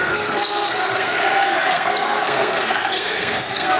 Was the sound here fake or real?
fake